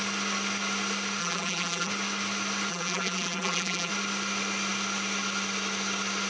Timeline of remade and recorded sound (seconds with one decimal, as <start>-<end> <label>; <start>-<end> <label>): 0.0-1.2 recorded; 1.2-1.9 remade; 1.9-2.7 recorded; 2.7-3.9 remade; 3.9-6.3 recorded